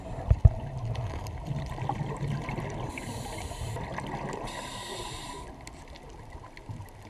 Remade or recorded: recorded